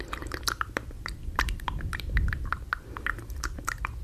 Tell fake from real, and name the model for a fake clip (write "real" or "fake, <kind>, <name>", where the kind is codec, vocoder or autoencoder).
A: fake, vocoder, BigVGAN v2